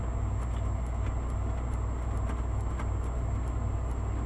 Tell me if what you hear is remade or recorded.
recorded